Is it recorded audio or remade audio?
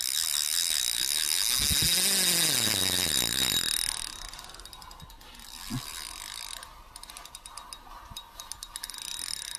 recorded